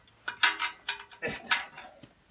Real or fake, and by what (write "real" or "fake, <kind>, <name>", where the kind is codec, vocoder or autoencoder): real